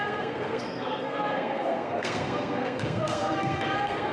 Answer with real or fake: fake